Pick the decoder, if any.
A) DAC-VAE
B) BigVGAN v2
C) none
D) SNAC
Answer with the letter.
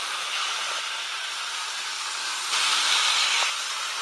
C